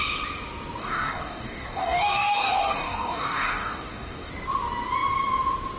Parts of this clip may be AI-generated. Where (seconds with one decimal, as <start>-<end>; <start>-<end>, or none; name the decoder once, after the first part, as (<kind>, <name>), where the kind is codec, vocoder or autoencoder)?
0.8-4.3 (codec, DAC)